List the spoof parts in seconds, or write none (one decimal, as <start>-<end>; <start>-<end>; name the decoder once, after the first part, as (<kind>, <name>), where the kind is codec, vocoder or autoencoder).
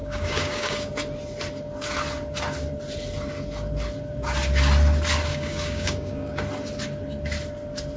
0.0-0.9 (codec, DAC); 5.3-6.4